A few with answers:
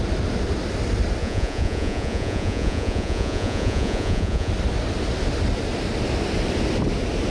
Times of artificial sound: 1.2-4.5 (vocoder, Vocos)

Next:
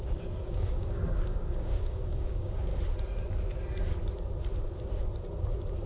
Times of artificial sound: 0.0-2.7 (codec, DAC)

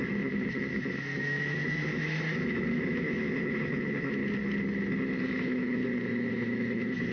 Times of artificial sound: 0.0-4.2 (autoencoder, DAC-VAE); 5.2-5.8; 6.3-7.1

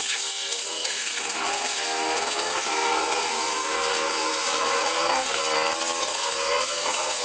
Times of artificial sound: 0.0-5.4 (codec, SNAC); 6.0-7.2

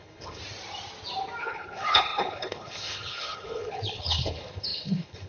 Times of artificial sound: 0.0-0.4 (codec, HILCodec); 1.4-5.3

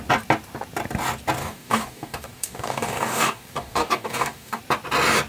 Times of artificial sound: 1.4-4.6 (codec, DAC)

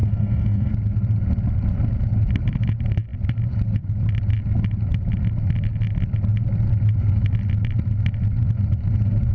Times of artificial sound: 0.0-0.7 (codec, SNAC)